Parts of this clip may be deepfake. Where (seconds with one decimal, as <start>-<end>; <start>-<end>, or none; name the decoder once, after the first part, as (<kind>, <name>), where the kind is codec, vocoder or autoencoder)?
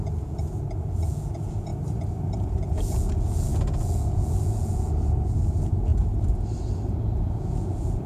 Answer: 0.0-1.7 (vocoder, Vocos); 2.5-5.9; 6.7-8.1